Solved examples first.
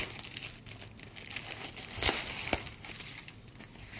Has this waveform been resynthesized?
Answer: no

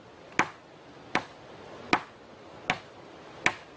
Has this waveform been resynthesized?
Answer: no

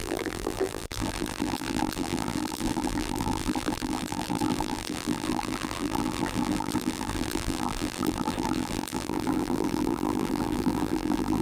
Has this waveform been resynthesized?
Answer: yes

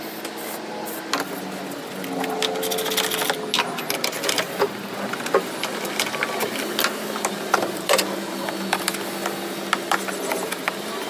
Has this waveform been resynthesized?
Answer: no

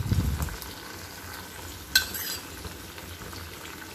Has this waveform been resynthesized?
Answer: no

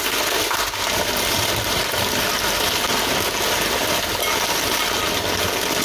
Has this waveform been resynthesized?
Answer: no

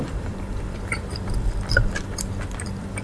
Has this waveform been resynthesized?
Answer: yes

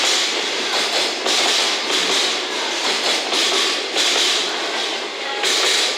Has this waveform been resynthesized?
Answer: no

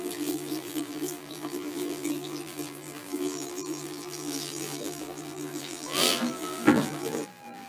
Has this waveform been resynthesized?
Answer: yes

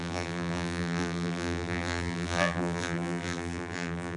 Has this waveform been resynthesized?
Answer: yes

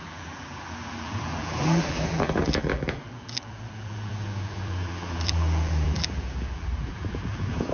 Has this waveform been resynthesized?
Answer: yes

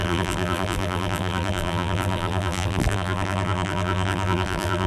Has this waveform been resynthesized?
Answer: yes